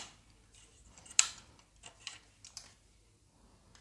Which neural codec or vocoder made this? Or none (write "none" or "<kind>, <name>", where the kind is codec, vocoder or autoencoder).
none